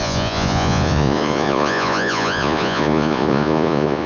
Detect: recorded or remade remade